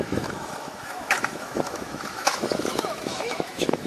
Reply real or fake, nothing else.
fake